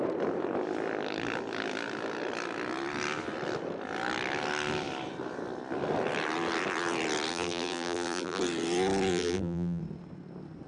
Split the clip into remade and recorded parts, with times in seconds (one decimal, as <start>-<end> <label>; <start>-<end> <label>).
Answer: 0.0-7.3 recorded; 7.3-8.4 remade; 8.4-9.1 recorded; 9.1-9.8 remade; 9.8-10.7 recorded